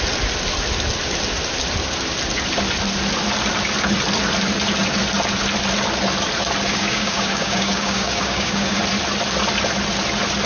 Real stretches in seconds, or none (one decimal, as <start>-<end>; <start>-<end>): 0.0-6.7; 8.8-10.5